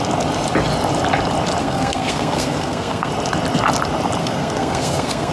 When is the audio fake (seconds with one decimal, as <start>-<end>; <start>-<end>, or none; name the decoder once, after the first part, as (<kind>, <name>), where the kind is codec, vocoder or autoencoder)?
1.6-3.1 (codec, SNAC); 4.2-5.3